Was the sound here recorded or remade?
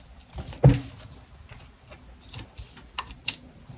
recorded